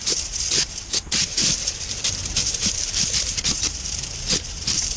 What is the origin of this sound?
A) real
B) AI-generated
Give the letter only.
B